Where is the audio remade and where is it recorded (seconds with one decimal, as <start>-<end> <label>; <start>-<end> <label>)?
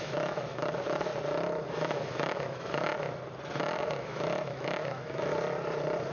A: 0.0-1.1 remade; 1.1-1.7 recorded; 1.7-2.9 remade; 2.9-3.6 recorded; 3.6-5.3 remade; 5.3-6.1 recorded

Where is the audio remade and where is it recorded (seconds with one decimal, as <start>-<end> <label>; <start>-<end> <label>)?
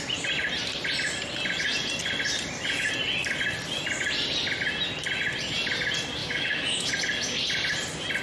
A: 0.0-6.2 recorded; 6.2-6.9 remade; 6.9-8.2 recorded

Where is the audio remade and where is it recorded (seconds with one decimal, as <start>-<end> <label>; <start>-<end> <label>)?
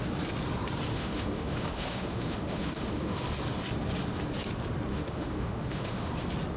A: 0.0-0.9 recorded; 0.9-3.2 remade; 3.2-4.9 recorded; 4.9-6.1 remade; 6.1-6.6 recorded